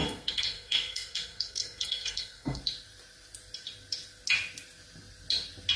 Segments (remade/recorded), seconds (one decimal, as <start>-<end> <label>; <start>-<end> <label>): 0.0-2.6 remade; 2.6-5.8 recorded